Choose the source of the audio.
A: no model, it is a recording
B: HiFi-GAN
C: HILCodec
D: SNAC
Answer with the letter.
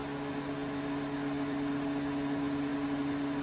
A